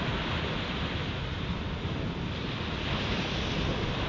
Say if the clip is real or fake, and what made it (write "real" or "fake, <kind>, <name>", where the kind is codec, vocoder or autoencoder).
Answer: real